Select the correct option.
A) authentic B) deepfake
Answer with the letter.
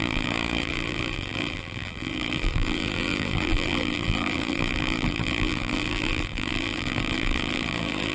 B